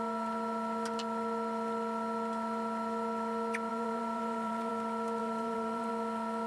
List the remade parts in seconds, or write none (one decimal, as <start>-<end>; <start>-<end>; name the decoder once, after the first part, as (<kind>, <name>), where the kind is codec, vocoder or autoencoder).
3.7-4.7 (vocoder, BigVGAN v2); 5.2-5.9